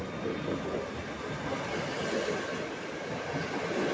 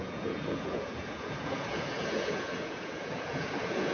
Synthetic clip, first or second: second